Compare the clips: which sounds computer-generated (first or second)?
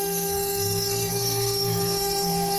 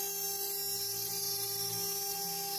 first